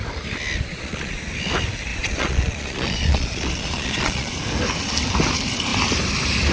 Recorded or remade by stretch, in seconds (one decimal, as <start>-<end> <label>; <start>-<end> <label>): 0.0-0.7 recorded; 0.7-1.2 remade; 1.2-1.9 recorded; 1.9-4.3 remade; 4.3-6.5 recorded